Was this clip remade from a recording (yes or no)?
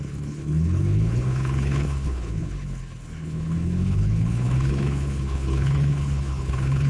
yes